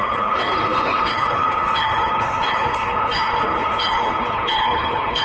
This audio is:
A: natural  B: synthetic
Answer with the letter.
B